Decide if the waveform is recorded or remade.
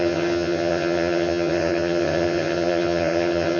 remade